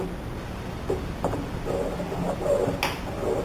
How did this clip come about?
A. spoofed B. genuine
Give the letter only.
B